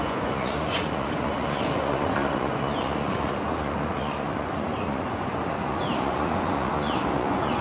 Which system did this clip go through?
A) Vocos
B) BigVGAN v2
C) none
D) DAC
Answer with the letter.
A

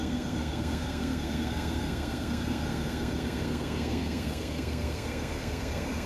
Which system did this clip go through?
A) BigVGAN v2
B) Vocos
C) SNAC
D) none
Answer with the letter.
C